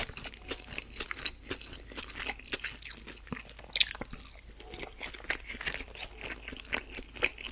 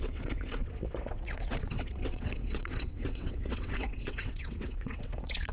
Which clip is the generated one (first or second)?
second